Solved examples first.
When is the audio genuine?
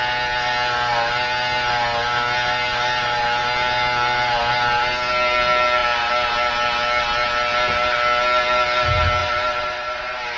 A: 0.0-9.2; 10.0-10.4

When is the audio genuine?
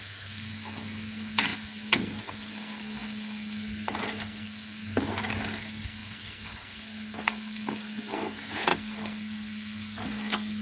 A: none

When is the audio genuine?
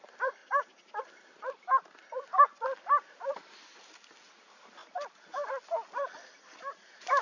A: 0.0-7.2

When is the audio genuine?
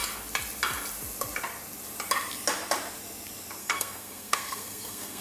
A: 0.0-3.6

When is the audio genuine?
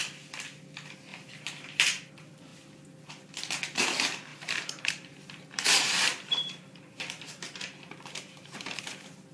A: 0.0-1.1; 2.1-4.3; 8.8-9.3